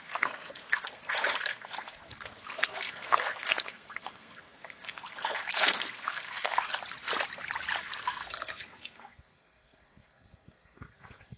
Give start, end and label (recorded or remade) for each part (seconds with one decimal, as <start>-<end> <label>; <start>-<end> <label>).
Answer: 0.0-6.7 remade; 6.7-7.8 recorded; 7.8-11.4 remade